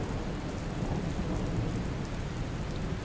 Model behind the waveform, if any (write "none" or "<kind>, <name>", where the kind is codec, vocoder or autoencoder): none